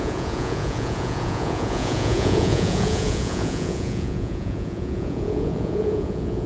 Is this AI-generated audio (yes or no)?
yes